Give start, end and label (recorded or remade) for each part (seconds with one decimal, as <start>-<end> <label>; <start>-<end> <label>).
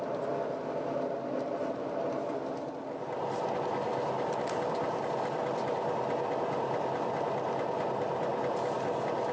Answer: 0.0-9.3 recorded